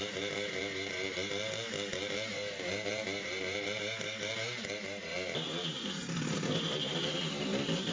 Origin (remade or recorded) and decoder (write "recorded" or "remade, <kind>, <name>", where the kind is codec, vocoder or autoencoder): recorded